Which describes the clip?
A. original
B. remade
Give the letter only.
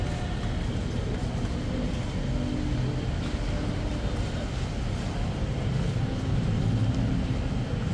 A